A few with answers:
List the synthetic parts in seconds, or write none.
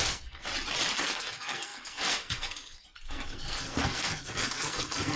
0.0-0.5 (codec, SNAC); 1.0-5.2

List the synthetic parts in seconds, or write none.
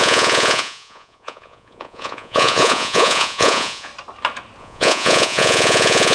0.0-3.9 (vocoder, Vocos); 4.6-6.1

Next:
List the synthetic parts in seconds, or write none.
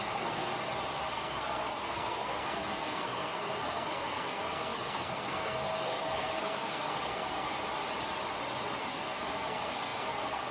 0.0-0.5 (codec, SNAC); 1.1-7.6; 8.8-10.5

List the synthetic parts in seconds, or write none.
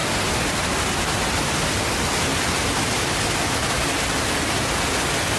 none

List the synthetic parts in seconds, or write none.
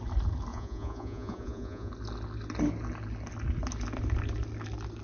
0.5-1.9 (vocoder, Vocos)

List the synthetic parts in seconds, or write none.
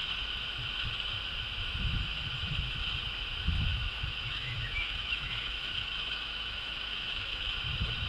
3.7-7.5 (autoencoder, DAC-VAE)